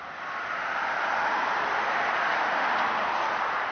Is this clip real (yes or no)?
yes